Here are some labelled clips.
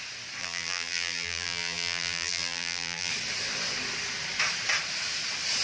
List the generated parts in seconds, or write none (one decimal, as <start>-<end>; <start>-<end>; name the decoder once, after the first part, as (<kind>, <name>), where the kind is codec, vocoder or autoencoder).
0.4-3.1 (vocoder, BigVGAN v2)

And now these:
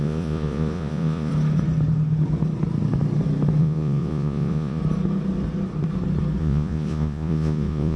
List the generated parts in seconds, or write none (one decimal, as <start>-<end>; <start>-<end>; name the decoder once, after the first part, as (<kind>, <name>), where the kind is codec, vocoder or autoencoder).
0.0-1.3 (vocoder, Vocos); 3.6-4.8; 6.4-8.0

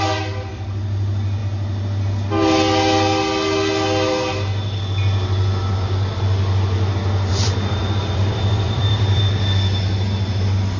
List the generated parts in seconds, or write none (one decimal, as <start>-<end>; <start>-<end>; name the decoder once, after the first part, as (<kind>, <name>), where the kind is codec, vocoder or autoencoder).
7.3-9.2 (vocoder, BigVGAN v2)

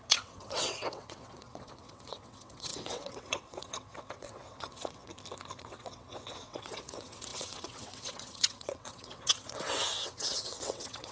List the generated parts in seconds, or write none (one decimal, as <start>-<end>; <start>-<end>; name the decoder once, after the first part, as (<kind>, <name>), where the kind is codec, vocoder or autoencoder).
0.0-5.1 (vocoder, WaveNeXt); 5.6-11.1

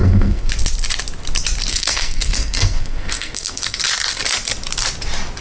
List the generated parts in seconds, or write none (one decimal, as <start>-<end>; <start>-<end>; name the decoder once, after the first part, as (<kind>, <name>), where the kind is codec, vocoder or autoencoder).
0.0-0.5 (codec, SNAC); 1.7-3.8